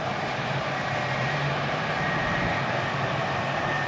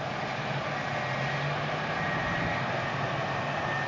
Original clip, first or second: second